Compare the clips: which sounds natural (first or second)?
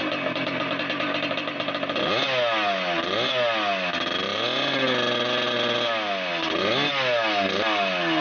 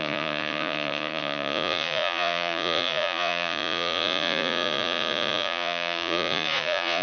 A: first